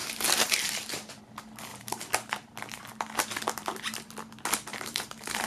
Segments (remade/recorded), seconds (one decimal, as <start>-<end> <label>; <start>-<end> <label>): 0.0-1.2 remade; 1.2-1.7 recorded; 1.7-2.5 remade; 2.5-4.7 recorded; 4.7-5.5 remade